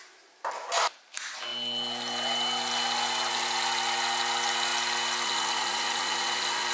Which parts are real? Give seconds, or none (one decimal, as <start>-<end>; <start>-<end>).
0.0-6.7